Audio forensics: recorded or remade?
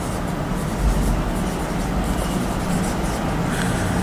recorded